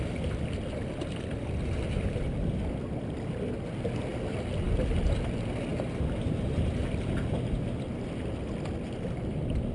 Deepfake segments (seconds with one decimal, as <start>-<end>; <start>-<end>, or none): none